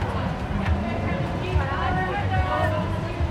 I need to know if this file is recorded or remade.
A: recorded